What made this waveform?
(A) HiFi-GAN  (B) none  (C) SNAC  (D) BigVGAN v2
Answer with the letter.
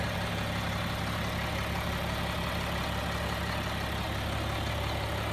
B